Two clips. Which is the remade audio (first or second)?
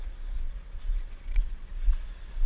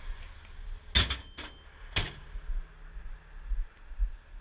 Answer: first